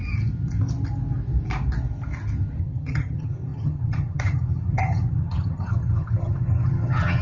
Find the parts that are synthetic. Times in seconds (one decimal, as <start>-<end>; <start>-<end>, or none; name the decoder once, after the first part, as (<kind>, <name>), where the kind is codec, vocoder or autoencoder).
2.6-7.2 (vocoder, HiFi-GAN)